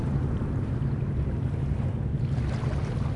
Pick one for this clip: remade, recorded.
recorded